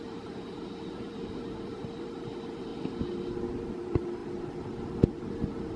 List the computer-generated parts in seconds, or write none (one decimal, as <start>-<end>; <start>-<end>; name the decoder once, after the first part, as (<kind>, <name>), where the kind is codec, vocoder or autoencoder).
0.0-2.7 (vocoder, BigVGAN v2); 3.6-4.2; 5.2-5.8